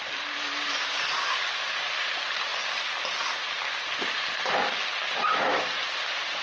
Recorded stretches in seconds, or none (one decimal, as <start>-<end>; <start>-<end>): 2.5-4.9